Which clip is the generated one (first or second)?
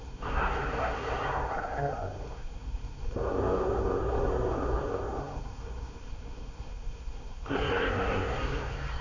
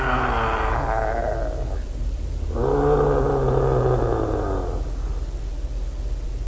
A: first